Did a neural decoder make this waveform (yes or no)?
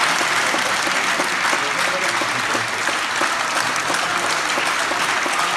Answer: no